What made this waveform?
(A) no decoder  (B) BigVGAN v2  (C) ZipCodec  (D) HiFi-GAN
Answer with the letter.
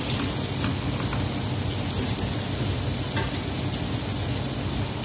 A